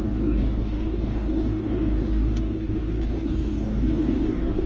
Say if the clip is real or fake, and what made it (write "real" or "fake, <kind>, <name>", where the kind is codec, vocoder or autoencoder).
fake, codec, DAC